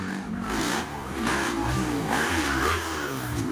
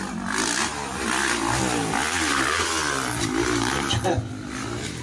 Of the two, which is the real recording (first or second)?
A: second